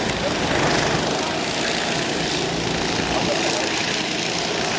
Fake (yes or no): no